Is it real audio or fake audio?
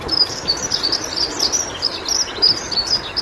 real